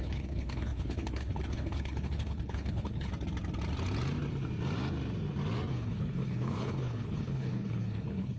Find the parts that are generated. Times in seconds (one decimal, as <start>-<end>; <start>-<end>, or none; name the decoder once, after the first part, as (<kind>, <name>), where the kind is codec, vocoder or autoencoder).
0.0-3.1 (codec, HILCodec); 5.7-8.4

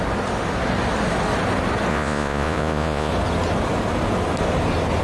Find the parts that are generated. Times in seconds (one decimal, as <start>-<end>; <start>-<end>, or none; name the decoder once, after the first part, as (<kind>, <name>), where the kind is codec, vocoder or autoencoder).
1.9-3.1 (vocoder, Vocos)

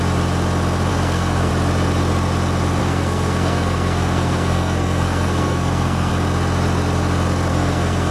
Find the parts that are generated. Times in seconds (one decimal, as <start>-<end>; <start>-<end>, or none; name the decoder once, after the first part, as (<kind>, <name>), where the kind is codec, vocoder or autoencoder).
0.9-1.5 (codec, SNAC); 2.8-6.1; 7.5-8.1

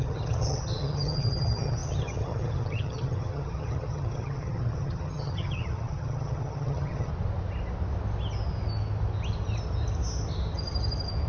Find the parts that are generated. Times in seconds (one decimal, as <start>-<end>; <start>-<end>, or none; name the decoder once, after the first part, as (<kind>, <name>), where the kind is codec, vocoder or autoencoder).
0.0-7.1 (vocoder, HiFi-GAN)

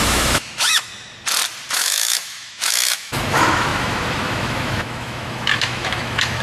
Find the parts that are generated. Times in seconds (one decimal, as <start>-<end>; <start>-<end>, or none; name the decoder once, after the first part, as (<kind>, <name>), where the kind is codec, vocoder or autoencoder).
0.0-0.9 (autoencoder, DAC-VAE); 1.7-6.4

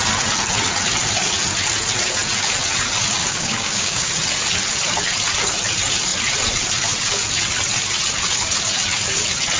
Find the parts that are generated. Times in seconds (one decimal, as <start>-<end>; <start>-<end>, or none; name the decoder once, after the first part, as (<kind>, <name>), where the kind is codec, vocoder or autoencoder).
3.2-4.1 (codec, DAC)